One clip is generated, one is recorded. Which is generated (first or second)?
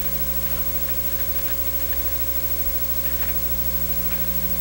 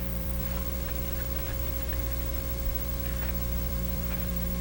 second